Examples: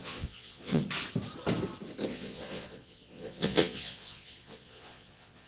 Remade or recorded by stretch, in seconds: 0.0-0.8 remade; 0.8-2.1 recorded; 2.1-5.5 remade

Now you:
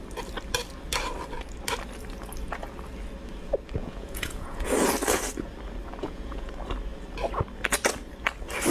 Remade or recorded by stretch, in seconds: 0.0-3.8 recorded; 3.8-4.7 remade; 4.7-6.0 recorded; 6.0-6.5 remade; 6.5-8.7 recorded

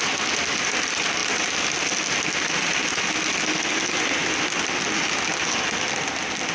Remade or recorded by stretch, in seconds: 0.0-6.5 recorded

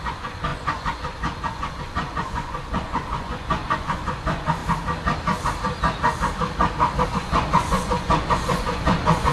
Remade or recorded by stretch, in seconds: 0.0-4.6 remade; 4.6-7.1 recorded; 7.1-9.3 remade

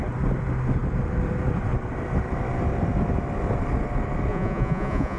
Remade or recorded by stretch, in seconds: 0.0-4.3 recorded; 4.3-5.2 remade

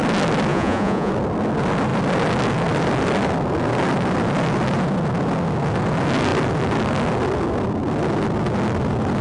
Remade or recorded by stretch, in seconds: 0.0-0.5 recorded; 0.5-1.1 remade; 1.1-9.2 recorded

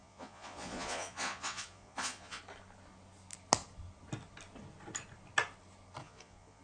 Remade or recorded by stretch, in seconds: 0.0-2.4 remade; 2.4-6.0 recorded; 6.0-6.6 remade

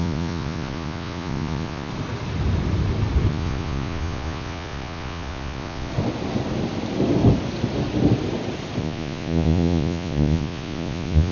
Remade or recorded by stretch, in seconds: 0.0-1.9 remade; 1.9-3.3 recorded; 3.3-5.9 remade; 5.9-8.8 recorded; 8.8-11.3 remade